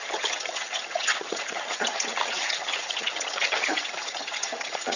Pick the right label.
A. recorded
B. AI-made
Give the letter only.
B